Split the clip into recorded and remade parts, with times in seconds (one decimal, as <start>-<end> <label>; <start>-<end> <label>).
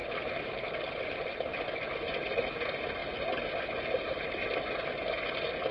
0.0-0.8 remade; 0.8-5.7 recorded